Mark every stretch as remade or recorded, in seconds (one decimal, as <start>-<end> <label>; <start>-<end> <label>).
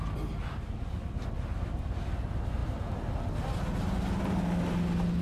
0.0-5.2 recorded